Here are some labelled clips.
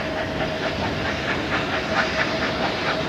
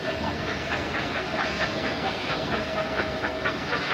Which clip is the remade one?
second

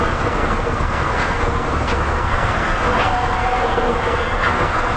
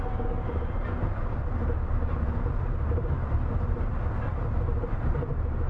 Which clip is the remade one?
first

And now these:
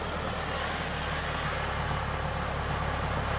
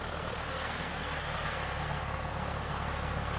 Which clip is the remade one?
second